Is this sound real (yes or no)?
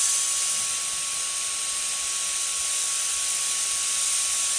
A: yes